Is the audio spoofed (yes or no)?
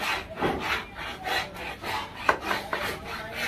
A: no